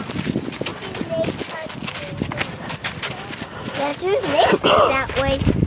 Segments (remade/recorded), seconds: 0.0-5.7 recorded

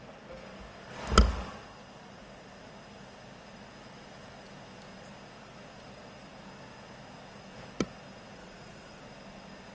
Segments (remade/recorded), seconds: 0.0-8.4 recorded; 8.4-9.0 remade; 9.0-9.7 recorded

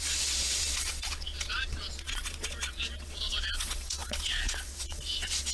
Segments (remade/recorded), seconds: 0.0-5.5 remade

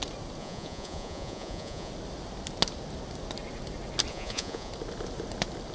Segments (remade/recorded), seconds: 0.0-0.4 recorded; 0.4-1.9 remade; 1.9-4.1 recorded; 4.1-4.7 remade; 4.7-5.7 recorded

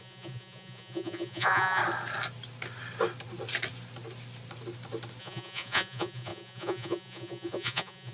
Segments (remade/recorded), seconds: 0.0-1.8 remade; 1.8-5.2 recorded; 5.2-8.1 remade